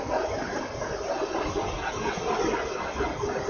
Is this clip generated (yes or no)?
no